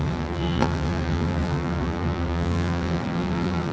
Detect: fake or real fake